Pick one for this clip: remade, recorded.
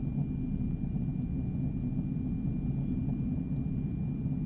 recorded